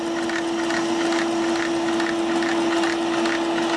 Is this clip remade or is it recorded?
recorded